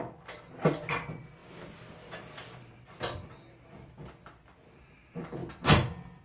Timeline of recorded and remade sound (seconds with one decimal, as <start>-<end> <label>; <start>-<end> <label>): 0.0-6.2 recorded